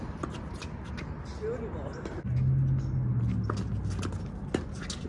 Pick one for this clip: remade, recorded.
recorded